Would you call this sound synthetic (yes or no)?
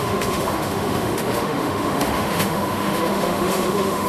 yes